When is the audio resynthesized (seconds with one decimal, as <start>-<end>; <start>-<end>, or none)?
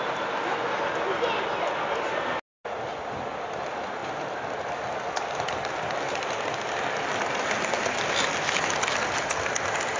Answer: none